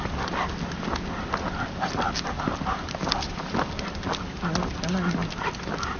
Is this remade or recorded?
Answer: recorded